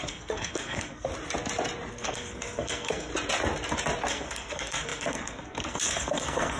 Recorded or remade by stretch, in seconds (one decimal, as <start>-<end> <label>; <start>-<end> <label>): 0.0-1.1 remade; 1.1-1.9 recorded; 1.9-3.1 remade; 3.1-4.1 recorded; 4.1-6.6 remade